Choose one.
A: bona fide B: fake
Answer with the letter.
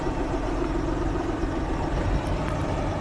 B